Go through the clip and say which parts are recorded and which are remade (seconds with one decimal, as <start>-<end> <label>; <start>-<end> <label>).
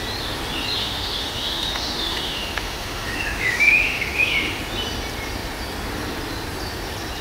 0.0-0.8 recorded; 0.8-4.6 remade; 4.6-7.2 recorded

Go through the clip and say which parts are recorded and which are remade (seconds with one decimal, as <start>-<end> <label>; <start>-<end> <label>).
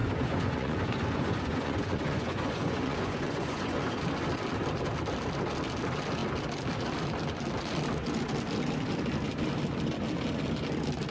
0.0-4.0 remade; 4.0-11.1 recorded